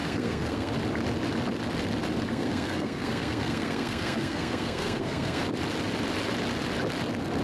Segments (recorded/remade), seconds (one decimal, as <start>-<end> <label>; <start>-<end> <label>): 0.0-0.7 remade; 0.7-2.3 recorded; 2.3-5.4 remade; 5.4-7.4 recorded